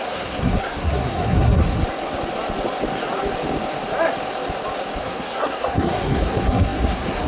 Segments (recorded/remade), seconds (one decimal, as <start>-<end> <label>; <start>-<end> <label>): 0.0-1.6 remade; 1.6-5.0 recorded; 5.0-7.3 remade